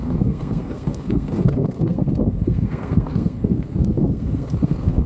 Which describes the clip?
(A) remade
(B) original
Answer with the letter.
A